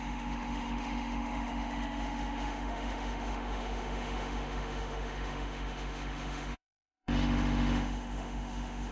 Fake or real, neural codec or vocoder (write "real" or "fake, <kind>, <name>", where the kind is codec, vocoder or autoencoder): fake, autoencoder, DAC-VAE